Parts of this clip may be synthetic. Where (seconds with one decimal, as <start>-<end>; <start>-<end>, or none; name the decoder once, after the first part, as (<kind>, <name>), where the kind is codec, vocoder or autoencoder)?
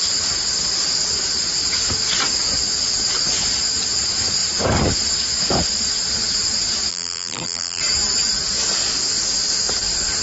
6.9-7.8 (vocoder, BigVGAN v2)